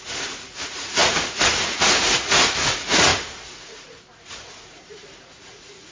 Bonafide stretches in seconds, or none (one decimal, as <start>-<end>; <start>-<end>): none